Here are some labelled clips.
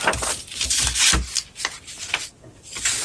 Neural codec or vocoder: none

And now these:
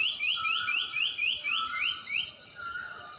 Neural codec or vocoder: none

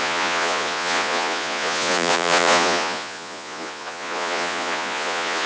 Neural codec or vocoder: vocoder, Vocos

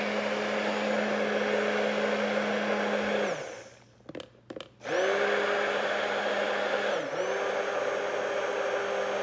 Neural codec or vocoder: none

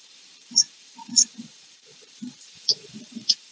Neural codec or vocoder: vocoder, Vocos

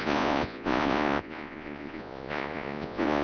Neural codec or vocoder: vocoder, Vocos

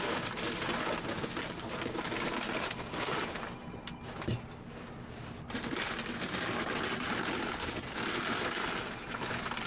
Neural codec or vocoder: none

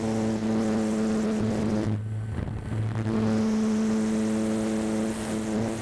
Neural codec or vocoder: none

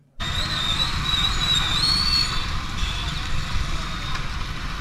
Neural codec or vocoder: none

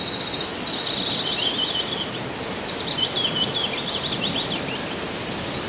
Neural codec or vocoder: none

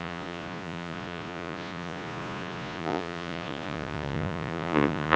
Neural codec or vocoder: vocoder, Vocos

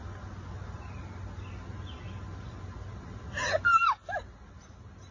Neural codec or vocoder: none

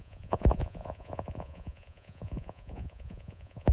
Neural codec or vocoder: vocoder, Vocos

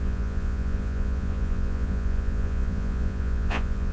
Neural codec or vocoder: vocoder, Vocos